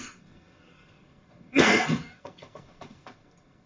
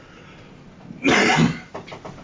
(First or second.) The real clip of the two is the second